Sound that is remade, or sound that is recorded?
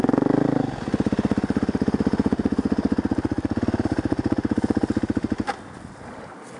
recorded